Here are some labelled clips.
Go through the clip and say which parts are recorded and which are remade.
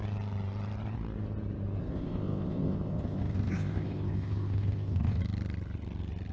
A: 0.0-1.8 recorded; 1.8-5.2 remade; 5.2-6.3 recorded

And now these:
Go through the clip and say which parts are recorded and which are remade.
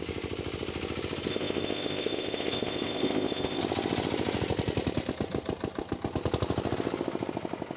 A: 0.0-1.3 recorded; 1.3-3.6 remade; 3.6-7.8 recorded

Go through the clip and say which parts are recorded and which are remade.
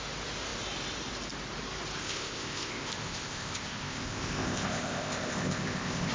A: 0.0-2.0 recorded; 2.0-6.1 remade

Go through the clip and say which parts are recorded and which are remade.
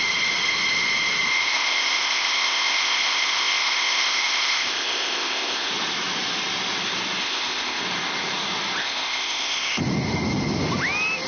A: 0.0-1.3 recorded; 1.3-5.7 remade; 5.7-7.2 recorded; 7.2-7.8 remade; 7.8-8.8 recorded; 8.8-9.8 remade; 9.8-11.3 recorded